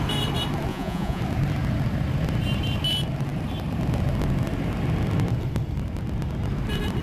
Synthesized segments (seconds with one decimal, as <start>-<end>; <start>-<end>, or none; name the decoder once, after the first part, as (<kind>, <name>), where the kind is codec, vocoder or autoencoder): 0.7-1.2 (vocoder, Vocos)